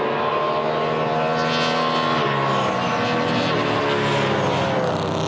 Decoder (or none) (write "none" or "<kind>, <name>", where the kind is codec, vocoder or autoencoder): none